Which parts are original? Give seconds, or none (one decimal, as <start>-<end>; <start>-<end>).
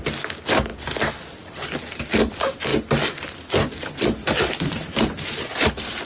0.0-4.2